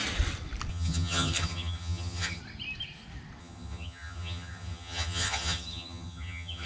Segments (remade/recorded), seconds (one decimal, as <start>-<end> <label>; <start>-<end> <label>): 0.0-0.7 recorded; 0.7-2.4 remade; 2.4-3.4 recorded; 3.4-6.7 remade